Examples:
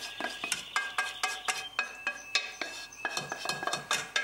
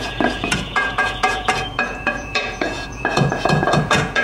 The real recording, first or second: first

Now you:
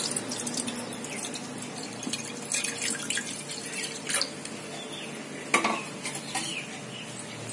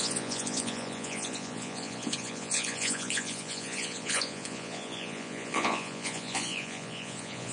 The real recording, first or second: first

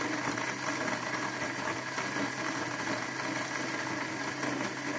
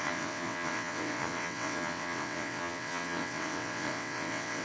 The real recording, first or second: first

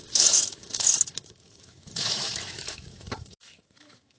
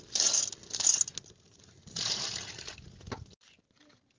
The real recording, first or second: second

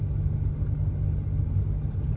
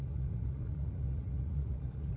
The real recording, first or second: first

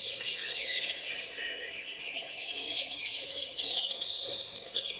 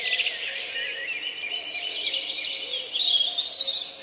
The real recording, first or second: second